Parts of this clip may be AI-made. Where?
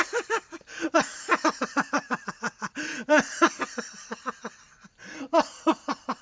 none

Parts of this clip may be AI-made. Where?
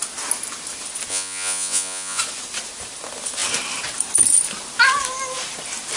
1.1-2.2 (vocoder, Vocos)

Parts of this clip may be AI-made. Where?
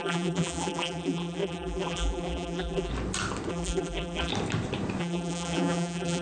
0.0-2.9 (vocoder, BigVGAN v2); 3.5-4.3; 5.0-6.2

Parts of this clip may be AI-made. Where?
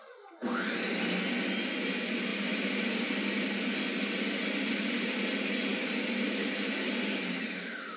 none